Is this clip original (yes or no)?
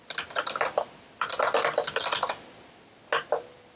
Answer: yes